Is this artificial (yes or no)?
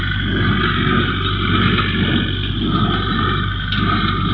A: no